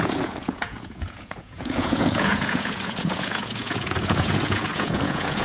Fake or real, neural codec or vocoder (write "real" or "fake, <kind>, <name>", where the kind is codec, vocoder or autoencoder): fake, vocoder, Vocos